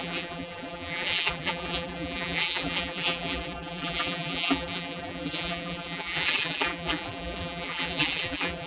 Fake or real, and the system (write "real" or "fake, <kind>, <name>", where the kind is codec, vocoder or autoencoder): fake, vocoder, BigVGAN v2